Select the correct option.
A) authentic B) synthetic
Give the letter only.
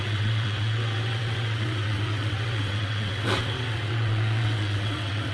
B